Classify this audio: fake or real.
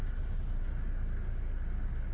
real